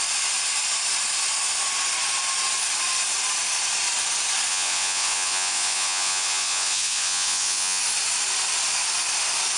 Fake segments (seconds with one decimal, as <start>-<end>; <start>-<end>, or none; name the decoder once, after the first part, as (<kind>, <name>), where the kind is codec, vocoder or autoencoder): 4.5-7.8 (vocoder, Vocos)